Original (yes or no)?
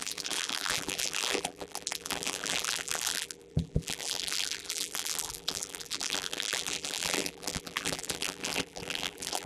no